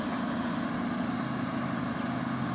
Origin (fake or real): real